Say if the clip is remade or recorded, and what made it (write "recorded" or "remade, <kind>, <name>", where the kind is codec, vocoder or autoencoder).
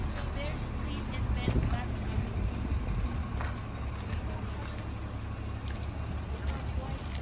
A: recorded